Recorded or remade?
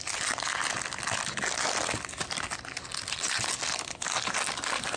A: recorded